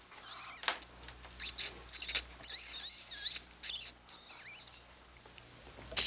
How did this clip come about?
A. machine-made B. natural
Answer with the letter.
B